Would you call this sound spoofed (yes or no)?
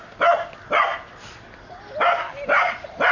no